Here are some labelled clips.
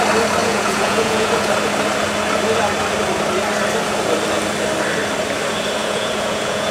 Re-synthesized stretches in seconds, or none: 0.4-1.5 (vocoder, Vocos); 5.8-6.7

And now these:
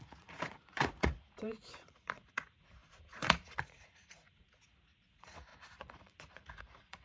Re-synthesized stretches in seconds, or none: 0.0-7.0 (vocoder, Vocos)

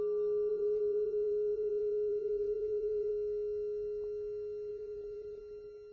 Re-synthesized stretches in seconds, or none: 0.5-3.1 (vocoder, Vocos); 4.7-5.4

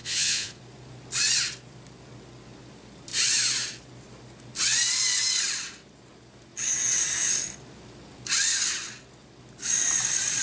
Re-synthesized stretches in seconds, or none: 0.0-0.6 (vocoder, Vocos)

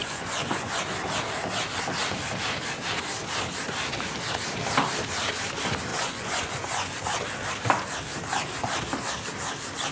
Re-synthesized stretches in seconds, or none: 0.0-0.8 (vocoder, Vocos); 5.9-7.0

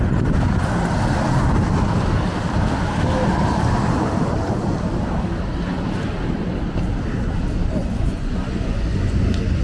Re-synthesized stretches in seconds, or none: 7.8-9.6 (vocoder, Vocos)

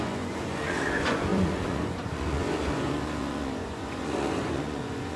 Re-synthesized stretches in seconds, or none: 0.0-5.2 (vocoder, Vocos)